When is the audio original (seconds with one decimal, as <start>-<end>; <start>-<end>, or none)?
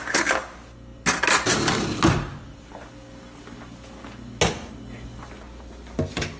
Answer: 0.0-6.4